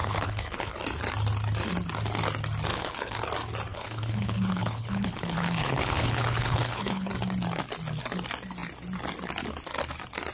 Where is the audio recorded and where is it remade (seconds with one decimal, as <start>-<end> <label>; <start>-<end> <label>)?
0.0-0.7 remade; 0.7-2.7 recorded; 2.7-3.2 remade; 3.2-3.7 recorded; 3.7-7.1 remade; 7.1-10.3 recorded